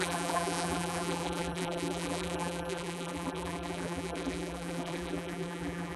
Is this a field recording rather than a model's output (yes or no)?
no